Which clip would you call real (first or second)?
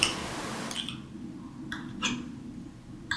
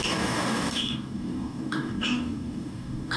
first